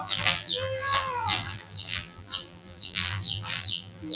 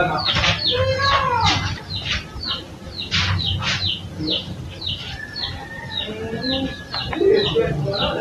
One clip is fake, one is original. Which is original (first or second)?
second